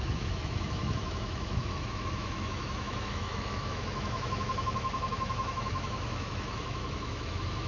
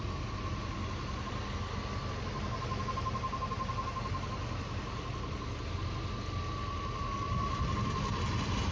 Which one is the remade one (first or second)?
first